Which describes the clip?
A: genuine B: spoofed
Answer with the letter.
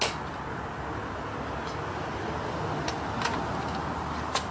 A